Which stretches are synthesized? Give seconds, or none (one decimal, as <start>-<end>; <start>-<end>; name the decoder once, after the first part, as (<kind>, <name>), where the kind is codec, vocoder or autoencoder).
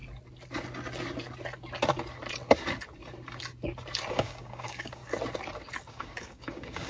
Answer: 4.1-5.0 (codec, DAC); 5.9-6.9